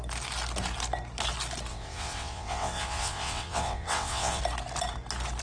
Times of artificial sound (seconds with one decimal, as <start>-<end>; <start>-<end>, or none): 1.7-4.4